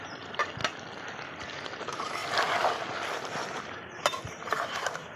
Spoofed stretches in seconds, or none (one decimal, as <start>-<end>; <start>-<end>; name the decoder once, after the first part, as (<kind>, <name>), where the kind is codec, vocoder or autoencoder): 0.0-0.6 (vocoder, BigVGAN v2); 1.8-2.2; 3.5-5.2

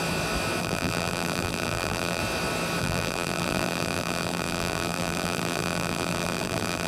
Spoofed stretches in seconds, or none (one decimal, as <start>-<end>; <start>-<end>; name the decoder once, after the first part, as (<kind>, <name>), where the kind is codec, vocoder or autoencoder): 0.6-2.2 (vocoder, BigVGAN v2); 2.8-6.9